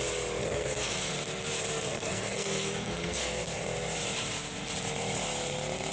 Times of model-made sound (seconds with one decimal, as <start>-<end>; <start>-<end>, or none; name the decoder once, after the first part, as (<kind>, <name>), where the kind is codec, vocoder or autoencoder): 0.4-1.1 (codec, SNAC); 1.9-3.6

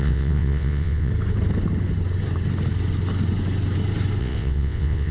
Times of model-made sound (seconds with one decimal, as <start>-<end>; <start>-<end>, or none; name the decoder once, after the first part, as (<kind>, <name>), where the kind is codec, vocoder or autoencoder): 0.0-1.1 (vocoder, WaveNeXt); 4.2-5.1

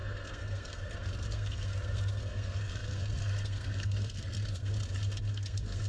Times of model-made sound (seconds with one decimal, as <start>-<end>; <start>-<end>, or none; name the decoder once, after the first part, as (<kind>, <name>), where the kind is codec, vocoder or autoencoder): 0.0-4.7 (codec, SNAC); 5.3-5.9